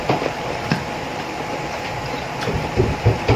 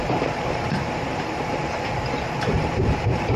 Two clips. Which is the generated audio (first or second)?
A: second